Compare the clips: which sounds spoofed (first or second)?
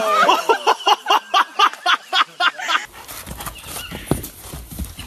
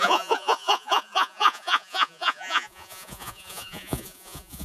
second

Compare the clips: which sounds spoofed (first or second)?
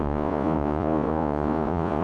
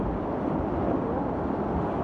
first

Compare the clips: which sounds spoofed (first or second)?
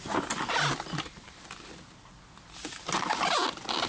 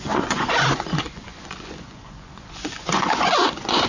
second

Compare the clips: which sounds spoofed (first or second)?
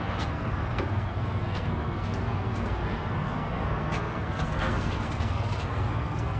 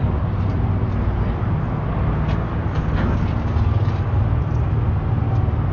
first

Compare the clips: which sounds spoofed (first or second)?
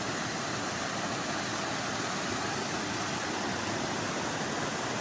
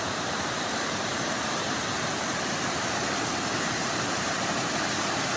second